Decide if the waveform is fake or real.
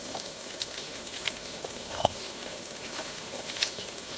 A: fake